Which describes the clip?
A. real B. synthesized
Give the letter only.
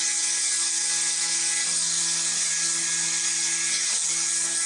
A